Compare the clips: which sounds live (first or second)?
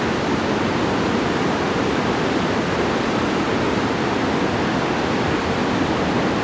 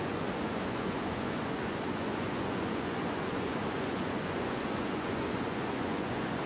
first